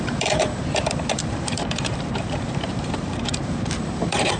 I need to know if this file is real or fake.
fake